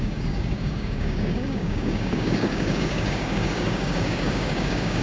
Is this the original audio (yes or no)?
no